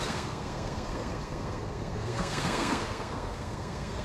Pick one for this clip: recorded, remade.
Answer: remade